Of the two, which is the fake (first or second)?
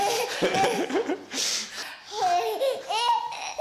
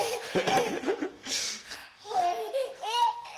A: second